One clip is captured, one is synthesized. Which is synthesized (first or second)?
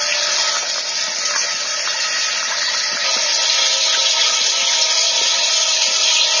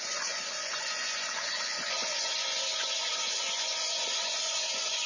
second